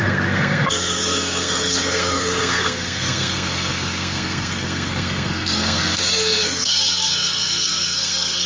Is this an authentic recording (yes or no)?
no